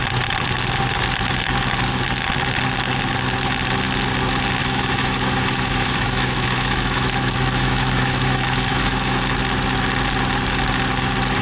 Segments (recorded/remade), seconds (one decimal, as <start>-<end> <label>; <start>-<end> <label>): 0.0-4.6 recorded; 4.6-9.2 remade; 9.2-11.4 recorded